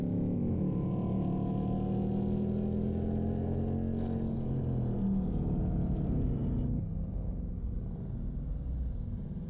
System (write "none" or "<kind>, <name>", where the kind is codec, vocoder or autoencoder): none